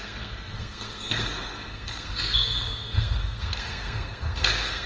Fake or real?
fake